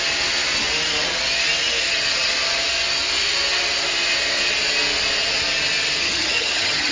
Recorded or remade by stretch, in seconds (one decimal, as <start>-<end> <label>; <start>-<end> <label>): 0.0-6.0 recorded; 6.0-6.9 remade